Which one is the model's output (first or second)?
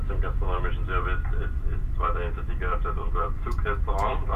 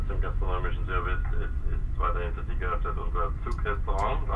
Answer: first